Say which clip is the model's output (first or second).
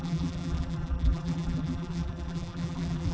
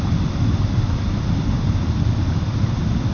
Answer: first